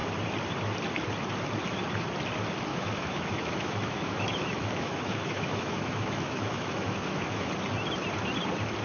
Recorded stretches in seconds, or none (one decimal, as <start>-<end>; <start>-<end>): 0.0-2.7; 7.5-8.8